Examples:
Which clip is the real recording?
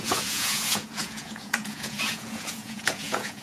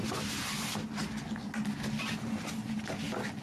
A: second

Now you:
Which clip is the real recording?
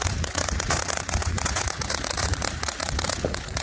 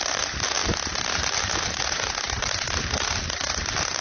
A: second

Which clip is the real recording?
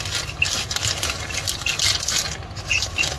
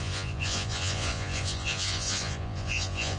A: first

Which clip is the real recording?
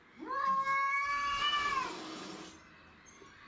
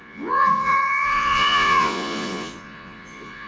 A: first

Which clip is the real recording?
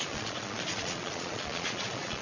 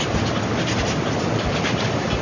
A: second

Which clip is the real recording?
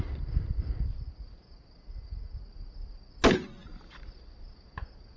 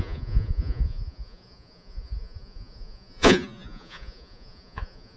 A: first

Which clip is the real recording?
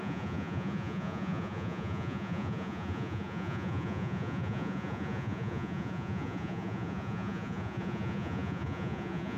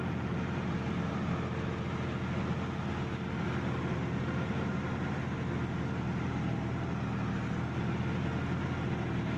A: second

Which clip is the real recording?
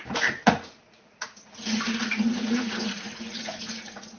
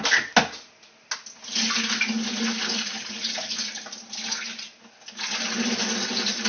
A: second